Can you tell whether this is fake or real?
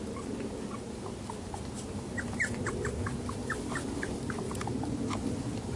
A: real